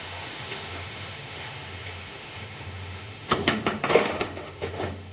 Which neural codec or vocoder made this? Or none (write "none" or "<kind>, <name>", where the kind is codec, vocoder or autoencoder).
autoencoder, DAC-VAE